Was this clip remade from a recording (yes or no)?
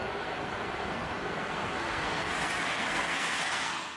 yes